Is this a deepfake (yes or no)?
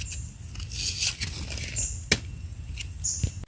no